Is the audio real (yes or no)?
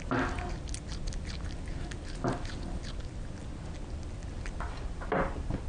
yes